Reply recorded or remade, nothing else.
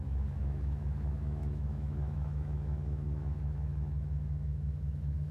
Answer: remade